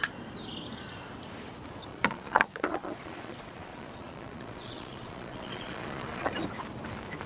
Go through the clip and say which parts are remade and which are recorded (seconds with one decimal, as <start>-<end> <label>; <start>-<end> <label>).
0.0-1.9 recorded; 1.9-6.3 remade; 6.3-7.3 recorded